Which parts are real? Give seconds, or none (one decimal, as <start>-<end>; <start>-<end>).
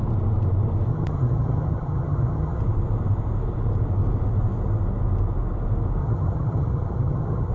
0.0-0.9; 2.6-6.0